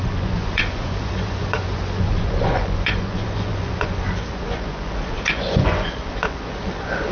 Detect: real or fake fake